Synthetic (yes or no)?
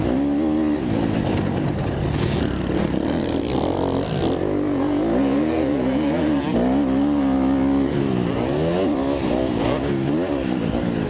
no